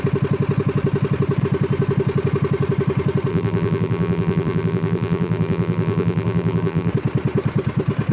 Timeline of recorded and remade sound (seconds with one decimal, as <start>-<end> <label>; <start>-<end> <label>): 0.0-3.3 recorded; 3.3-6.9 remade; 6.9-8.1 recorded